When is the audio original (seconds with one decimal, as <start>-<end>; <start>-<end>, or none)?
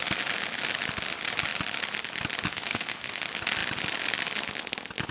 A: 0.0-2.5; 3.2-5.1